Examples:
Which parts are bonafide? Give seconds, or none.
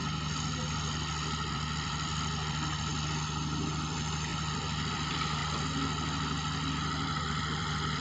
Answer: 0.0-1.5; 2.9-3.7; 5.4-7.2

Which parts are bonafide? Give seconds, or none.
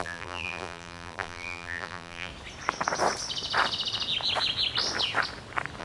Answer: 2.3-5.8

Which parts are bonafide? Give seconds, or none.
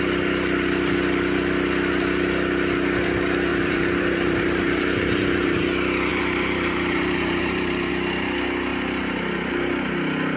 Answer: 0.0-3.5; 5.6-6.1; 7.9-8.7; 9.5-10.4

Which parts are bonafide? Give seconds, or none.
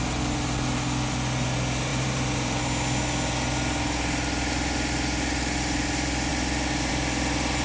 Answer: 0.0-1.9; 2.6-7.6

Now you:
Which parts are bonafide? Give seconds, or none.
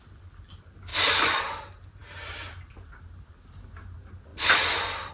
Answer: 0.0-0.9; 1.4-4.3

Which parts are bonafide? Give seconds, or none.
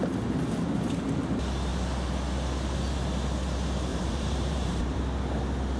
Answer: 0.0-3.9; 5.0-5.8